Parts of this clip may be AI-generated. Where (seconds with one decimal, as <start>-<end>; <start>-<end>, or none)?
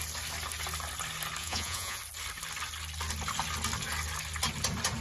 1.4-2.0